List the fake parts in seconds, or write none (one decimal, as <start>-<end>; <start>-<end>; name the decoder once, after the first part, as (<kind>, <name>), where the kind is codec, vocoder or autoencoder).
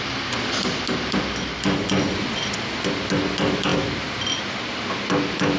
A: none